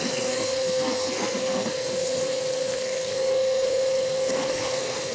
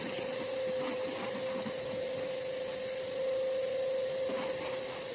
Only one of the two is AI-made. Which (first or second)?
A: first